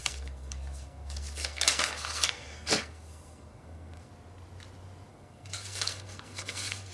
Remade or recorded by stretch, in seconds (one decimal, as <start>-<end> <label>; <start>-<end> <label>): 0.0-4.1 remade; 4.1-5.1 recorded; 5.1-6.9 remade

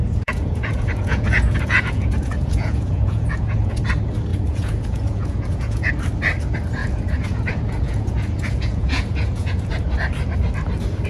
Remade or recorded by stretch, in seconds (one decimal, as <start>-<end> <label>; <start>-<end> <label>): 0.0-3.8 remade; 3.8-4.3 recorded; 4.3-5.9 remade; 5.9-6.8 recorded; 6.8-9.7 remade; 9.7-11.1 recorded

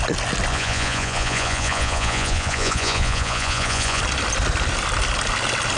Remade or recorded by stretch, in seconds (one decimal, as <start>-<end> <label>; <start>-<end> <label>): 0.0-0.5 recorded; 0.5-4.0 remade; 4.0-5.8 recorded

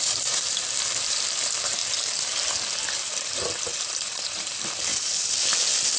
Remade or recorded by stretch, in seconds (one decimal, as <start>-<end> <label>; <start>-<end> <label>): 0.0-6.0 recorded

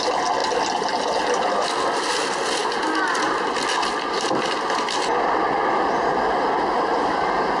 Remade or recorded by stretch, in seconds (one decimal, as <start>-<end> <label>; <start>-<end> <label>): 0.0-7.6 recorded